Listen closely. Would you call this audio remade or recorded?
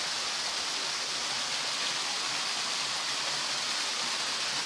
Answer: recorded